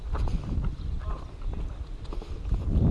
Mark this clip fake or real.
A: real